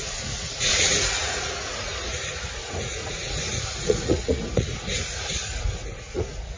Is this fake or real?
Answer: fake